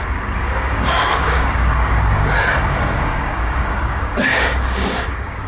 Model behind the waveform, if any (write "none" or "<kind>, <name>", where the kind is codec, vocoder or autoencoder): codec, DAC